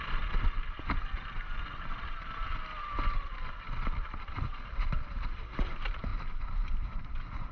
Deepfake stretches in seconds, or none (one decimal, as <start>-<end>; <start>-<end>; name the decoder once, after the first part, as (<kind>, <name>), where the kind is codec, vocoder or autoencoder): none